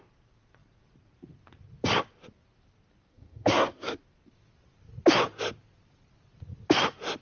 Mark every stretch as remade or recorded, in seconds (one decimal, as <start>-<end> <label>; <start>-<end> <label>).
0.0-3.1 recorded; 3.1-4.0 remade; 4.0-7.2 recorded